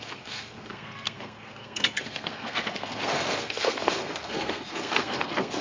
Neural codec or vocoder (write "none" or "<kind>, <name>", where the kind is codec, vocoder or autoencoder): codec, SNAC